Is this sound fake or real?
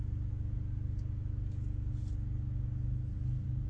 real